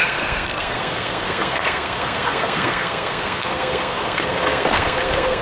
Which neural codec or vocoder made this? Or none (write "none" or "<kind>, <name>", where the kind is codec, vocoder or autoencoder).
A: codec, SNAC